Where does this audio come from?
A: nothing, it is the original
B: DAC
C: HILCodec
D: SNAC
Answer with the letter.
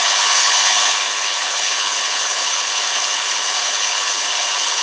C